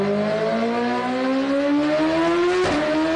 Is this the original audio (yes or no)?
yes